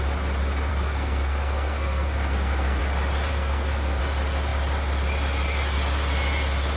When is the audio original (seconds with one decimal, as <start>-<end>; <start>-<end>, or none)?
0.0-0.7; 2.8-3.3; 4.0-6.8